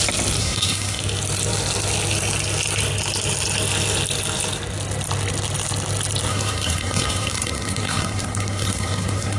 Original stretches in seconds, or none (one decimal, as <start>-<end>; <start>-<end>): 0.0-0.4; 1.0-6.3